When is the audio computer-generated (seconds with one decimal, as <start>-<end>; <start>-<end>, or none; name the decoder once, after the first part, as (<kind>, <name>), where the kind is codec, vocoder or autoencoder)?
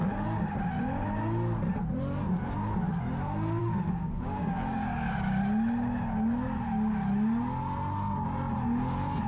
3.6-5.4 (codec, DAC)